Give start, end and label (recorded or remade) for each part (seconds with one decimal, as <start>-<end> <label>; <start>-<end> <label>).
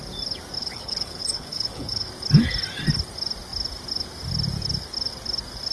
0.0-0.6 recorded; 0.6-2.1 remade; 2.1-5.7 recorded